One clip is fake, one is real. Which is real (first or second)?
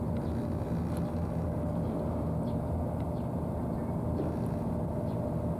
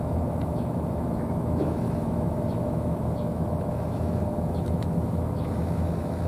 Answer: first